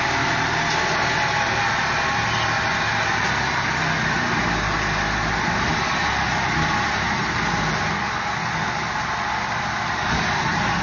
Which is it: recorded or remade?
recorded